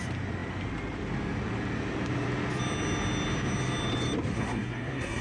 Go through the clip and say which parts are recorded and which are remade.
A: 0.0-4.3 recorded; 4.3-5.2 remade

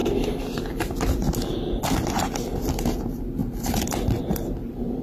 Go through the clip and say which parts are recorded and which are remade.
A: 0.0-5.0 recorded

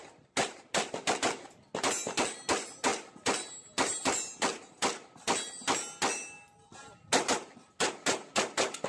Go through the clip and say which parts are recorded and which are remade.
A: 0.0-8.9 recorded

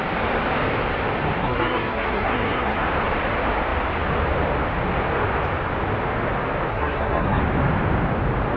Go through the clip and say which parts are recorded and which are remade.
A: 0.0-1.4 recorded; 1.4-2.8 remade; 2.8-6.7 recorded; 6.7-7.4 remade; 7.4-8.6 recorded

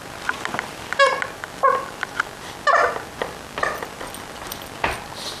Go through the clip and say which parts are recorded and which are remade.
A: 0.0-5.4 recorded

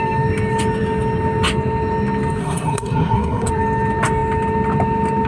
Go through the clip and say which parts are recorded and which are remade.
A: 0.0-2.4 recorded; 2.4-3.5 remade; 3.5-5.3 recorded

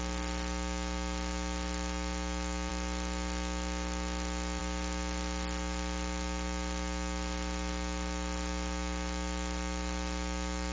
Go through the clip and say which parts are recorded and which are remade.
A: 0.0-10.7 recorded

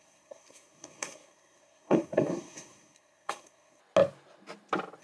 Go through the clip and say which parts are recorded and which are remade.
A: 0.0-3.8 remade; 3.8-5.0 recorded